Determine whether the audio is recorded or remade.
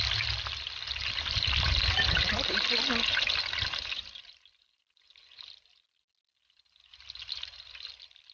recorded